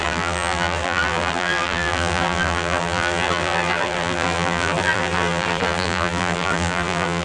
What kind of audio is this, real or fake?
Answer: fake